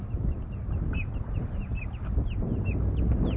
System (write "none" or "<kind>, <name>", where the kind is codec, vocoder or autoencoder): none